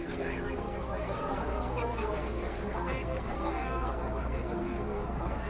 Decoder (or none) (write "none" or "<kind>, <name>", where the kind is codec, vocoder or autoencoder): codec, SNAC